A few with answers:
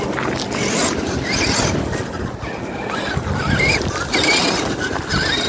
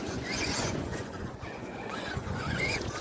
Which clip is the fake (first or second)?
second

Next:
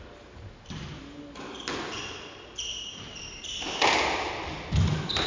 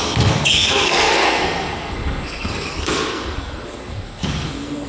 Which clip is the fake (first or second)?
second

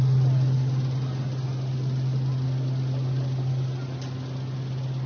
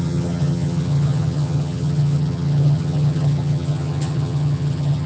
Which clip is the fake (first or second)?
second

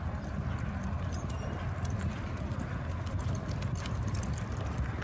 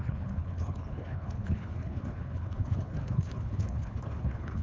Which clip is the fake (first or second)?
second